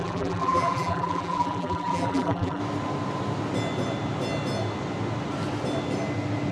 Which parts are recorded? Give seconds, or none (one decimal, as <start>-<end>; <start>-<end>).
2.6-6.5